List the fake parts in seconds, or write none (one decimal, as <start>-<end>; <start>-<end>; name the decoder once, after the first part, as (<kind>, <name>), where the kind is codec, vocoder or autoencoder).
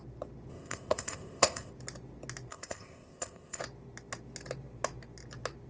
0.5-1.7 (codec, ZipCodec); 2.5-3.6